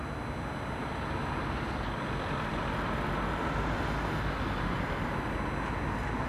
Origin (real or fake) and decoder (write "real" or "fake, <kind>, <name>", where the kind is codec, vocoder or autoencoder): real